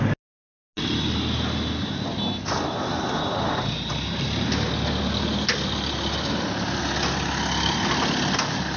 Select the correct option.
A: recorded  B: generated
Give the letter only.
A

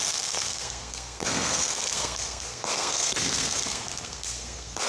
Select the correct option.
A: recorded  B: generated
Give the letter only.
B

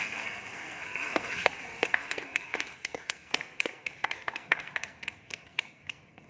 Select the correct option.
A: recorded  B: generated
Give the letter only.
B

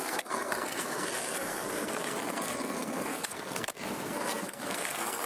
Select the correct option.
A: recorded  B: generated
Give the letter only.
B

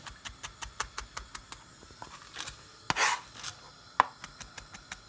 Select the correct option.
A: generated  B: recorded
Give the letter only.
B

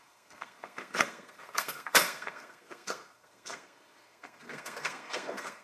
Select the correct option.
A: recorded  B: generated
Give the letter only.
B